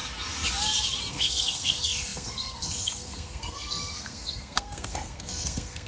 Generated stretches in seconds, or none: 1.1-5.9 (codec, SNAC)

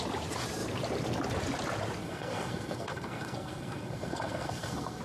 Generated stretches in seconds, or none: 2.0-5.0 (codec, SNAC)

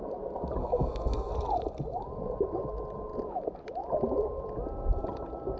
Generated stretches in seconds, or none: 0.6-1.3 (codec, SNAC)

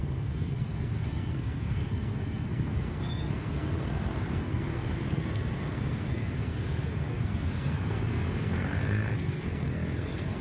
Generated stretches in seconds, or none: 0.0-10.4 (codec, SNAC)

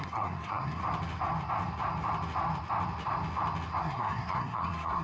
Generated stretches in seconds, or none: 0.0-0.8 (codec, SNAC); 3.8-5.0

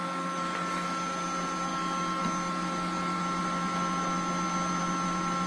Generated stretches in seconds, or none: none